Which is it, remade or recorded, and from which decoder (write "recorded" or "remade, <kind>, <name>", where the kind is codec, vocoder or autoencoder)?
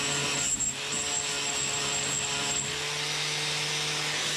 recorded